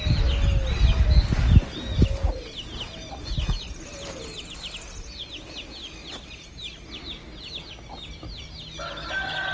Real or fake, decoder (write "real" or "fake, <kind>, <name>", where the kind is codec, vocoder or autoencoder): real